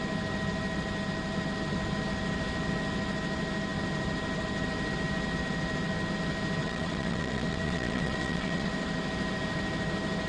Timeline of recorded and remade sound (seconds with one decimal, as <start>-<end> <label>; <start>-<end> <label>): 0.0-6.6 recorded; 6.6-8.7 remade; 8.7-10.3 recorded